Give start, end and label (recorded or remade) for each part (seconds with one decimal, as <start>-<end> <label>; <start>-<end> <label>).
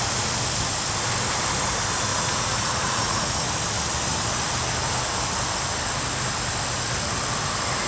0.0-2.1 recorded; 2.1-3.3 remade; 3.3-7.9 recorded